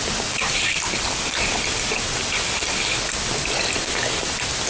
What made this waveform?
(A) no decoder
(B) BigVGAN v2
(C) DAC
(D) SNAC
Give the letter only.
A